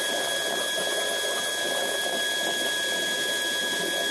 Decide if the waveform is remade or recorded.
recorded